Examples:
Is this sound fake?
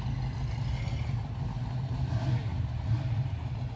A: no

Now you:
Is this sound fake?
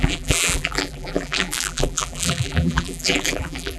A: yes